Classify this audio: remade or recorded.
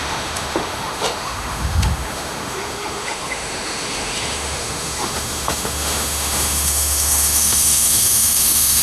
remade